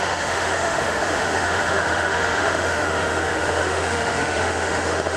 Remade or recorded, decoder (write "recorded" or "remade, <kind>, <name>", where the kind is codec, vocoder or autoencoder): remade, autoencoder, DAC-VAE